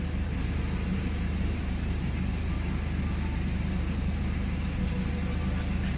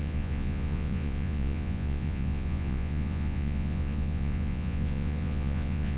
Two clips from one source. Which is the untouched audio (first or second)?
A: first